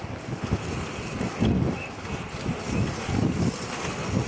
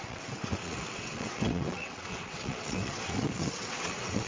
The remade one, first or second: second